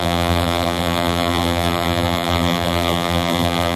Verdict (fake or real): fake